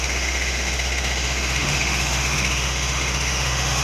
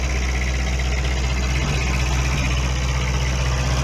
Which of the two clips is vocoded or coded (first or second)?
first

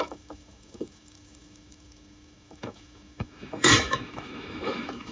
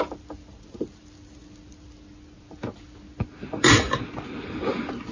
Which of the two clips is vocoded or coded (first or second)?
first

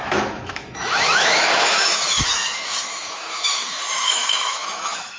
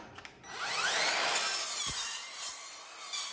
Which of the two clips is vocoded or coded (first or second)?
first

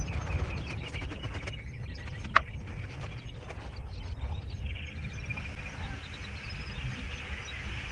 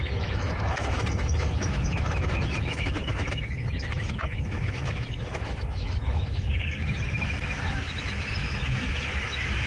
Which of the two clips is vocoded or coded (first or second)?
second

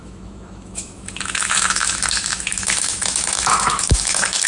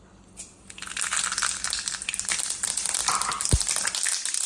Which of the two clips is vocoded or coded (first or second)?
first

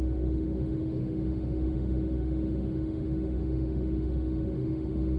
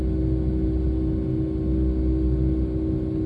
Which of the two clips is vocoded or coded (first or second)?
first